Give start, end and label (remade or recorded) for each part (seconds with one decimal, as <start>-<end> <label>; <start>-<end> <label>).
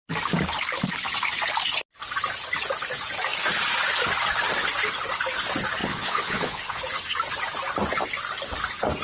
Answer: 0.0-5.8 recorded; 5.8-6.8 remade; 6.8-9.0 recorded